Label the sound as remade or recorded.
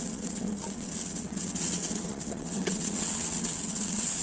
remade